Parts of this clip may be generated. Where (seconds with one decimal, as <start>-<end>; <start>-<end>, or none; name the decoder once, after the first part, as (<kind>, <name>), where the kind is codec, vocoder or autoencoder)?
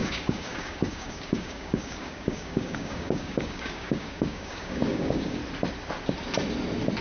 0.0-5.4 (codec, DAC)